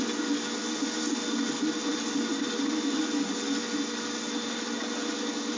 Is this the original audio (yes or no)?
yes